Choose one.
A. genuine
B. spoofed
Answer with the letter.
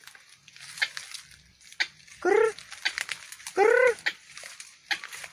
A